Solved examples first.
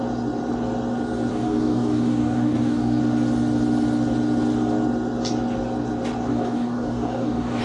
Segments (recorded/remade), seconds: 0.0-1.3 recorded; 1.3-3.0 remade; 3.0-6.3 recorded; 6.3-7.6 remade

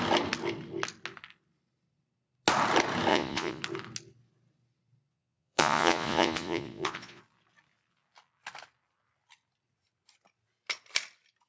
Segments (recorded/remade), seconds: 0.0-3.1 recorded; 3.1-3.6 remade; 3.6-5.1 recorded; 5.1-7.2 remade; 7.2-11.5 recorded

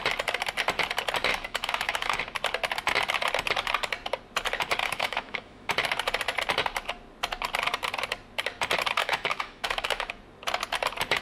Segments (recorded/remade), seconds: 0.0-1.3 recorded; 1.3-2.2 remade; 2.2-4.8 recorded; 4.8-5.7 remade; 5.7-9.0 recorded; 9.0-10.1 remade; 10.1-11.2 recorded

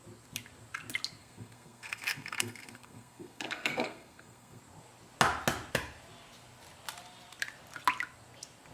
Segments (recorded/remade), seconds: 0.0-1.2 recorded; 1.2-4.6 remade; 4.6-8.7 recorded

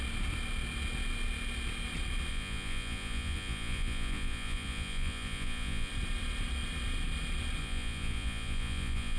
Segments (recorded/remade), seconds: 0.0-2.3 recorded; 2.3-5.9 remade; 5.9-7.6 recorded; 7.6-9.2 remade

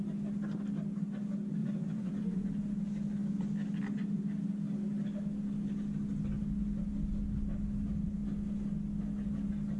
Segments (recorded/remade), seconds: 0.0-1.6 recorded; 1.6-2.4 remade; 2.4-9.8 recorded